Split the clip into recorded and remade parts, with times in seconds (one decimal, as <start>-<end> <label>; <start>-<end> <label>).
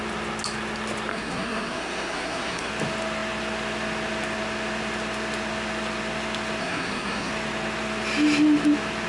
0.0-1.1 recorded; 1.1-2.7 remade; 2.7-6.6 recorded; 6.6-7.3 remade; 7.3-9.1 recorded